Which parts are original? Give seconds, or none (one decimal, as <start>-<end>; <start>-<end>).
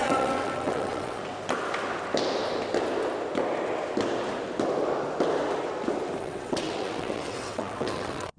1.2-6.2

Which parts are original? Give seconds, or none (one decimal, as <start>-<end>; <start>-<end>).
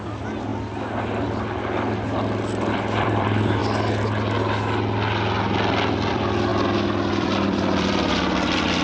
0.5-2.7; 3.6-6.1